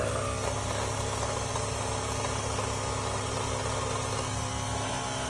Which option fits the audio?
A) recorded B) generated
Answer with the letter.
A